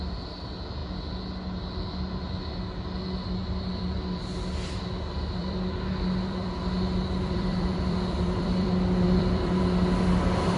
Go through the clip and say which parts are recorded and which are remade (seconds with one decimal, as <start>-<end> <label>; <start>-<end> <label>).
0.0-5.4 recorded; 5.4-9.6 remade; 9.6-10.6 recorded

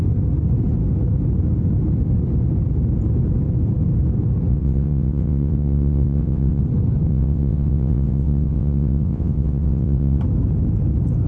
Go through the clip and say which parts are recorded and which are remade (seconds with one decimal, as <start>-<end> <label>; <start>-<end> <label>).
0.0-4.5 recorded; 4.5-6.6 remade; 6.6-7.1 recorded; 7.1-10.2 remade; 10.2-11.3 recorded

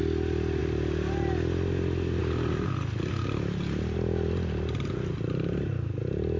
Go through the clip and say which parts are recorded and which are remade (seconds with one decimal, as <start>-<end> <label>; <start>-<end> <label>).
0.0-6.4 recorded

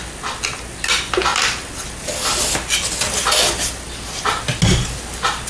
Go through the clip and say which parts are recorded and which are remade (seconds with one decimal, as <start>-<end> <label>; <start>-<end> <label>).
0.0-5.5 recorded

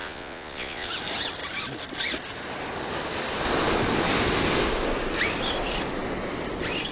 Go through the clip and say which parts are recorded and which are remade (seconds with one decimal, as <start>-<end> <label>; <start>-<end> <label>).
0.0-0.9 remade; 0.9-6.9 recorded

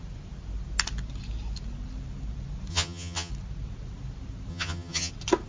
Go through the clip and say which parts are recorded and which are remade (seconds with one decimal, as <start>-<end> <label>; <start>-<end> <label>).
0.0-2.7 recorded; 2.7-3.3 remade; 3.3-4.5 recorded; 4.5-5.1 remade; 5.1-5.5 recorded

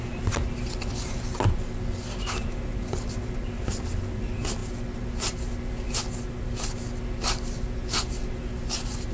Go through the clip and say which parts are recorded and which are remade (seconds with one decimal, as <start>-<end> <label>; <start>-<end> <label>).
0.0-9.1 recorded